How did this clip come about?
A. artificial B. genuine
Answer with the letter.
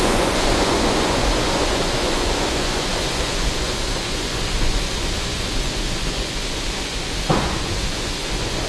A